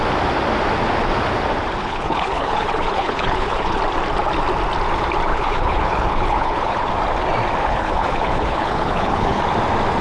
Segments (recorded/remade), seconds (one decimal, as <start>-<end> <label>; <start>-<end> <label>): 0.0-1.8 recorded; 1.8-3.8 remade; 3.8-5.3 recorded; 5.3-6.9 remade; 6.9-7.6 recorded; 7.6-9.4 remade; 9.4-10.0 recorded